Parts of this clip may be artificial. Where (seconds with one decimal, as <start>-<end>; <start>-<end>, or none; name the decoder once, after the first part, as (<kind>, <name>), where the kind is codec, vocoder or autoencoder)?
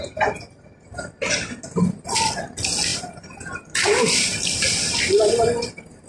2.9-4.7 (vocoder, BigVGAN v2)